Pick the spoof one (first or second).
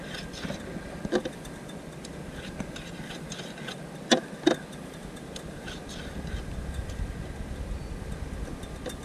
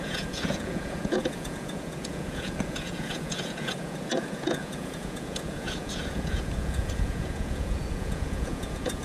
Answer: second